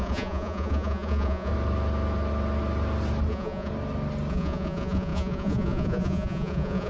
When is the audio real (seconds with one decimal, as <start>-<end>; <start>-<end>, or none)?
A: 1.5-3.3; 3.7-4.3